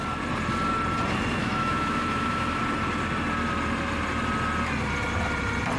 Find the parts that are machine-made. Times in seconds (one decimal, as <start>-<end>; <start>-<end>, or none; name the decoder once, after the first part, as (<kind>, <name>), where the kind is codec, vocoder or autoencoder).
1.4-2.6 (autoencoder, DAC-VAE)